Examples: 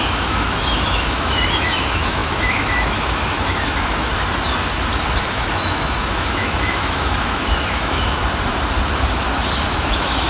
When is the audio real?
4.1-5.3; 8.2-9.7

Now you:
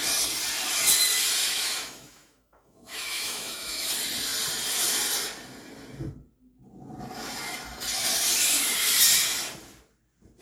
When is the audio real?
0.0-1.4; 3.9-10.4